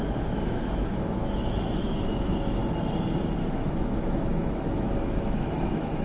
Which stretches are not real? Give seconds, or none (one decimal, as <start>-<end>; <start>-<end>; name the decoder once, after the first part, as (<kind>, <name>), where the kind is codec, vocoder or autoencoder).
0.0-2.6 (autoencoder, DAC-VAE); 3.4-6.0